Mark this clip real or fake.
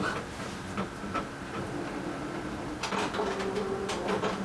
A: real